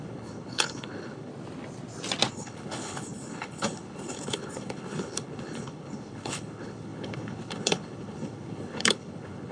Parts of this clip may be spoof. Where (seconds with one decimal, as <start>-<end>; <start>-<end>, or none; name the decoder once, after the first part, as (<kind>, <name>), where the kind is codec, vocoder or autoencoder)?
0.0-1.3 (codec, HILCodec); 2.3-9.5